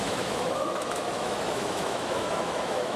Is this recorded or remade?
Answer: remade